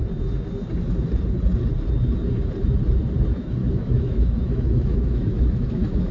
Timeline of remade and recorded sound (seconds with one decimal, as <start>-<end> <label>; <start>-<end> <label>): 0.0-3.6 recorded; 3.6-6.1 remade